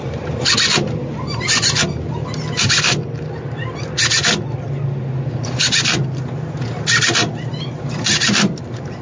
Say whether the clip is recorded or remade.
recorded